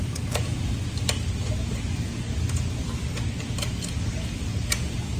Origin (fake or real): real